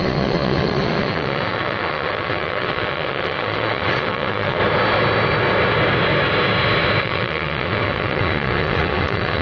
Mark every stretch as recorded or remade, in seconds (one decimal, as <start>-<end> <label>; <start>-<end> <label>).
0.0-4.6 remade; 4.6-7.0 recorded; 7.0-9.4 remade